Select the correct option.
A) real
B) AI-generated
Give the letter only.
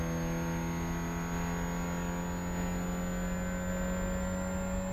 A